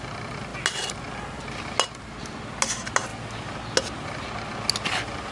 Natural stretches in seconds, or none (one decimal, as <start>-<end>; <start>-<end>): 0.0-5.3